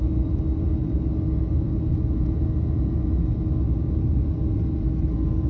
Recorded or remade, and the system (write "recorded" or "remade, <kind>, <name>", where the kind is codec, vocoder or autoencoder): recorded